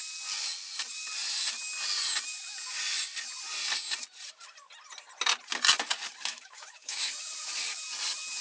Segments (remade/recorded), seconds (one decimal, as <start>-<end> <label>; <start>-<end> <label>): 0.0-6.3 recorded; 6.3-7.0 remade; 7.0-8.4 recorded